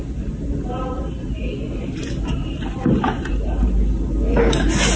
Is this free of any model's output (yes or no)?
yes